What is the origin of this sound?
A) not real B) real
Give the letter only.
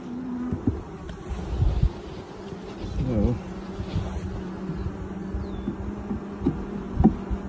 B